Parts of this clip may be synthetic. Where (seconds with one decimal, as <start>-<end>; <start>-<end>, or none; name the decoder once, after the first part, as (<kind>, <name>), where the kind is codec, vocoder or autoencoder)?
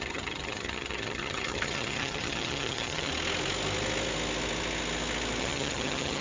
0.0-3.1 (vocoder, HiFi-GAN); 5.4-6.2